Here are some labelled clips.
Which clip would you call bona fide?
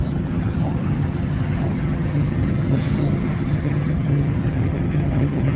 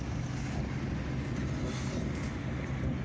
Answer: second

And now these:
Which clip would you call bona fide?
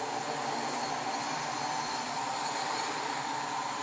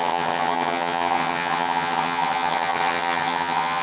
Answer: first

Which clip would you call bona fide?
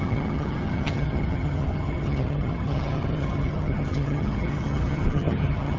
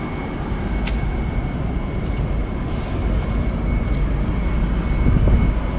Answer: second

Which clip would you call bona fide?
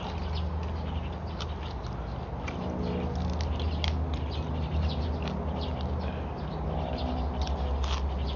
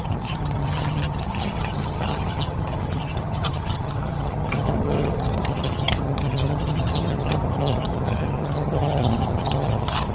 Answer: first